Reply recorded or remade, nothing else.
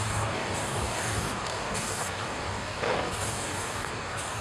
remade